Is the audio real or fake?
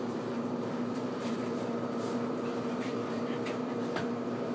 fake